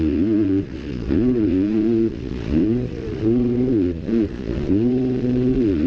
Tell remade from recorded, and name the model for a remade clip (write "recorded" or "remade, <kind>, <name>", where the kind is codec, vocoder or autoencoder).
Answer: remade, vocoder, Vocos